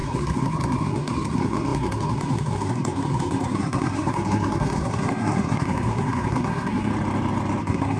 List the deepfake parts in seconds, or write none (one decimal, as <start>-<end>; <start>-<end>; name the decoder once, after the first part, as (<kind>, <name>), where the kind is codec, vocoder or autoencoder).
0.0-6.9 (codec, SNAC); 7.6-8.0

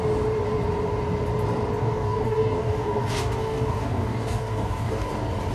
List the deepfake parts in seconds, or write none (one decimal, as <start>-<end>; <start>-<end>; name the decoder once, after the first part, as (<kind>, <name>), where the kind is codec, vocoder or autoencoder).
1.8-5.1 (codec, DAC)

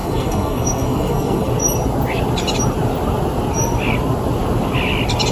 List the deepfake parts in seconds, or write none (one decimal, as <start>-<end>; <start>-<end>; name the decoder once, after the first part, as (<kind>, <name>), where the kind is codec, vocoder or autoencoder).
0.0-1.5 (codec, SNAC)